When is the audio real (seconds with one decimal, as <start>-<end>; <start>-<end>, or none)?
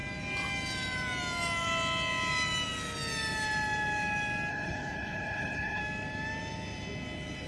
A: 0.0-4.5; 5.8-7.5